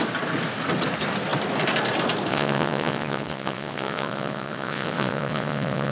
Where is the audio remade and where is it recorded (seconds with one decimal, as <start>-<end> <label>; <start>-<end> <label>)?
0.0-2.3 recorded; 2.3-5.9 remade